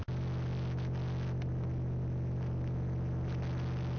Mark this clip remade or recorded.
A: recorded